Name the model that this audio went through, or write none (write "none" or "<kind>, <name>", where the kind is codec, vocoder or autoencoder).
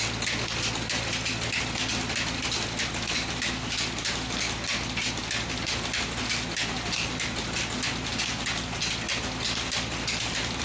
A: none